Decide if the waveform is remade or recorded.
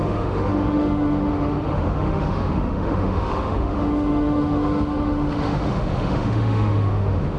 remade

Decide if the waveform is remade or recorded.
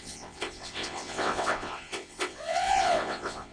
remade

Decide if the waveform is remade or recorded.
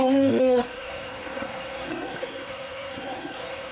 remade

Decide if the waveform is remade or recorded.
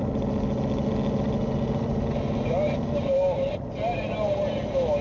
recorded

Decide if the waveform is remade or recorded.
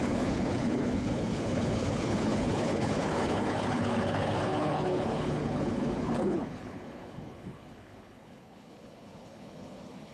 remade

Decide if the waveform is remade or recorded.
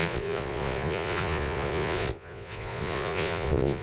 remade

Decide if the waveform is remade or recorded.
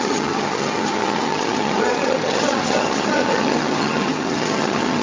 remade